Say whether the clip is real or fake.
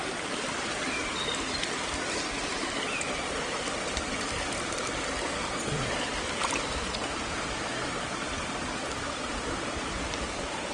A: real